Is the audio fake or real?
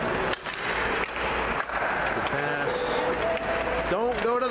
real